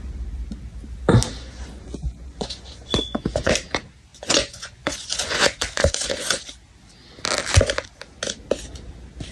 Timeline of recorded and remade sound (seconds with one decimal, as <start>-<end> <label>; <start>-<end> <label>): 0.0-1.4 recorded; 1.4-3.5 remade; 3.5-4.1 recorded; 4.1-6.4 remade; 6.4-9.3 recorded